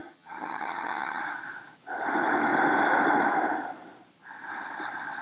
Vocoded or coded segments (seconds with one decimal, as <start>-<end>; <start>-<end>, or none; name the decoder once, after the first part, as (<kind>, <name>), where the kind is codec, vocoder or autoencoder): 0.0-1.2 (vocoder, HiFi-GAN)